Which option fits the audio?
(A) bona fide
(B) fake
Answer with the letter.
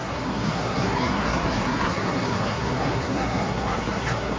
B